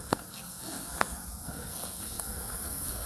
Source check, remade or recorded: remade